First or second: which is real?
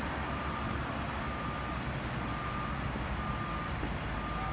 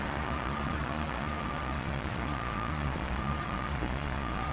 first